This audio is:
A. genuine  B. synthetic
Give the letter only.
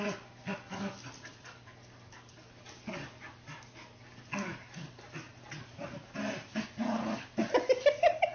A